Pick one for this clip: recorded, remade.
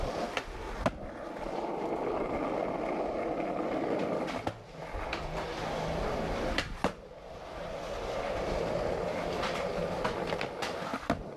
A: recorded